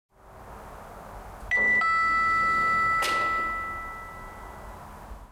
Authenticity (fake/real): real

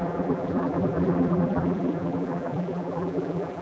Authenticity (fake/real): fake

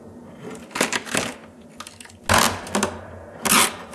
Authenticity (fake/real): real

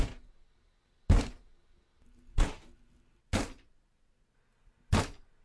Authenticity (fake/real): real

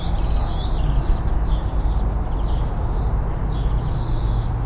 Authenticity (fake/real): real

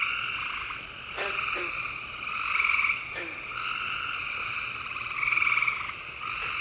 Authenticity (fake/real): real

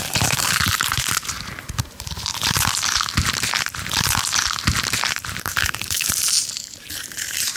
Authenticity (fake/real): fake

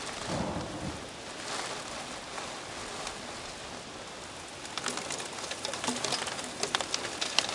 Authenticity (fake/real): real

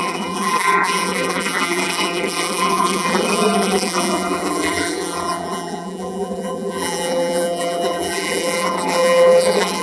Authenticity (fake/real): fake